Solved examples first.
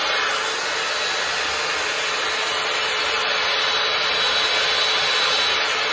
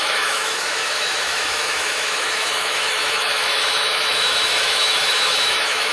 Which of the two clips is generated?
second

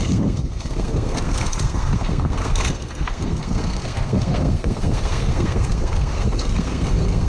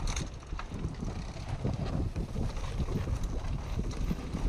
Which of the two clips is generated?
first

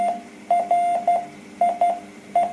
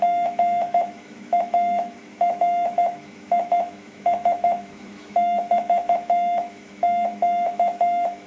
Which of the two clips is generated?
second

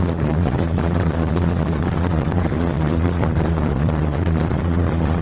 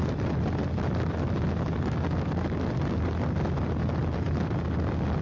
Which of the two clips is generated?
first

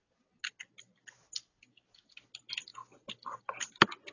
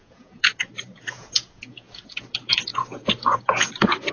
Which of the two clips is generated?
second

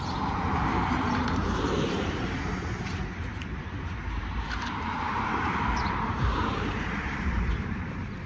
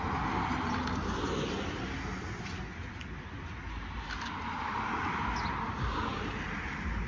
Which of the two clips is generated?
first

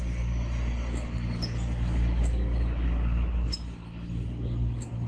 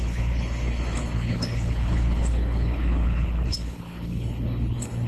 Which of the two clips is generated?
second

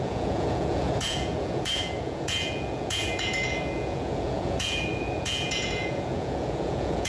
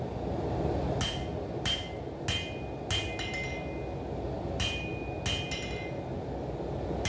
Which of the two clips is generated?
first